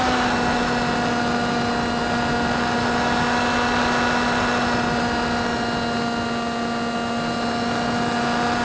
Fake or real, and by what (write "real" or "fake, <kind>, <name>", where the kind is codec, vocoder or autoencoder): real